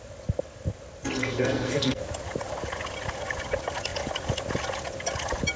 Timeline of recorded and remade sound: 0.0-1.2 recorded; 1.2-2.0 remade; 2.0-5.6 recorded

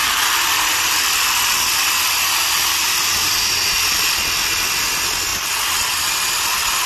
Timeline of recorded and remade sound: 0.0-4.1 remade; 4.1-6.9 recorded

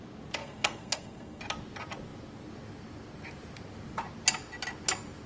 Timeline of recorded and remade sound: 0.0-0.4 recorded; 0.4-1.4 remade; 1.4-5.3 recorded

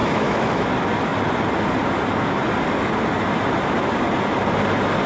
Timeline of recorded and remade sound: 0.0-0.7 remade; 0.7-5.1 recorded

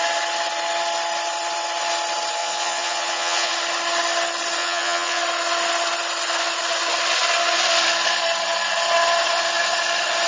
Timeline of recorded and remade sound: 0.0-2.4 recorded; 2.4-3.5 remade; 3.5-4.6 recorded; 4.6-5.2 remade; 5.2-10.3 recorded